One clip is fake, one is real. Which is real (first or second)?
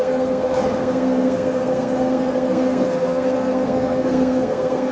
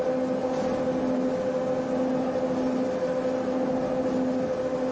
second